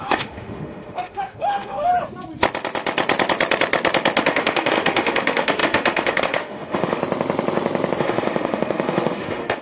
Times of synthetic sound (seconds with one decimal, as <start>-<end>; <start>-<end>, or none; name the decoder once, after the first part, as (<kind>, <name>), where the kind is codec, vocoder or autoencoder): 0.0-1.9 (autoencoder, DAC-VAE); 4.2-7.0; 8.0-9.6